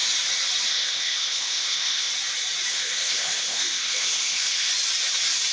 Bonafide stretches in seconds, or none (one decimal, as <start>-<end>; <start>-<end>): 0.0-0.7; 2.1-2.7; 4.7-5.5